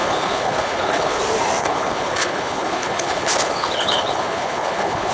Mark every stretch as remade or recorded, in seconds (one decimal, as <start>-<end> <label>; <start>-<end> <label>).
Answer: 0.0-1.2 remade; 1.2-1.6 recorded; 1.6-5.1 remade